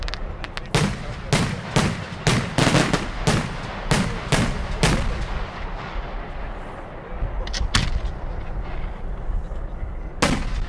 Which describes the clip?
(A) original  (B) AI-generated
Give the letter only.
A